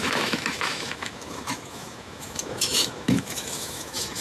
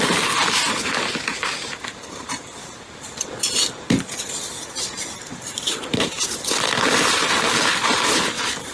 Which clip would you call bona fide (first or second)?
second